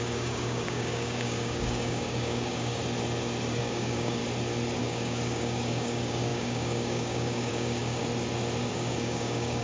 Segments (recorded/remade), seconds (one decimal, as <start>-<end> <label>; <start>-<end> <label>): 0.0-2.8 remade; 2.8-3.6 recorded; 3.6-4.2 remade; 4.2-4.8 recorded; 4.8-8.0 remade; 8.0-8.7 recorded; 8.7-9.6 remade